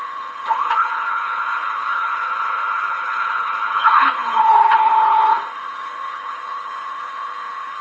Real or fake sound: fake